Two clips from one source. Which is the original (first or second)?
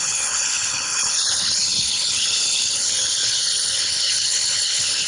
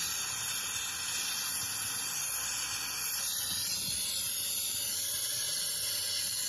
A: second